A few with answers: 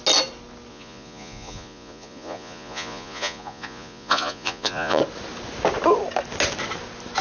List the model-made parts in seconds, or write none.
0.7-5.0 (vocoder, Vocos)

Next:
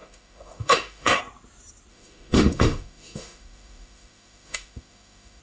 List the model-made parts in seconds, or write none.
0.0-1.2 (autoencoder, DAC-VAE); 1.9-5.4

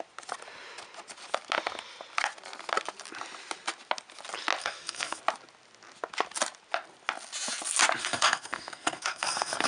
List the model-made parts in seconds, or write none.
4.6-5.2 (codec, SNAC); 8.0-9.7

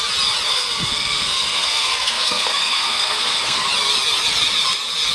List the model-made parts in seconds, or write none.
0.5-3.6 (codec, SNAC)

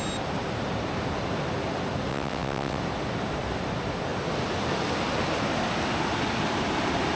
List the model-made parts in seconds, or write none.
2.1-2.8 (vocoder, WaveNeXt)

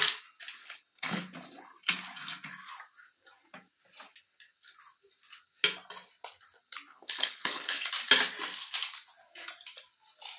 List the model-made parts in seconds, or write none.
0.6-1.2 (codec, HILCodec); 6.9-7.9

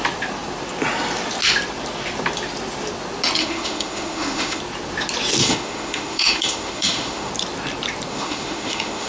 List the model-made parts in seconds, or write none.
3.4-4.6 (autoencoder, DAC-VAE); 5.4-7.3; 8.1-9.1